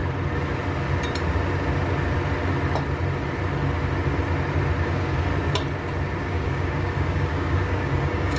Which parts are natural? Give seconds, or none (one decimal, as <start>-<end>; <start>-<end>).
0.0-4.8; 5.3-6.2

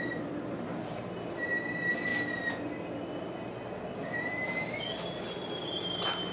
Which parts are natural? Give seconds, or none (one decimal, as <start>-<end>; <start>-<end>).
0.0-6.3